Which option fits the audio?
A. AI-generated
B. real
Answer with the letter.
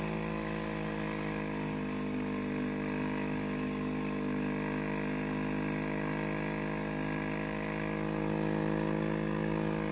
B